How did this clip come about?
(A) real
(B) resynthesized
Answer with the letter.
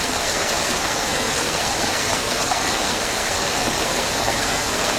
B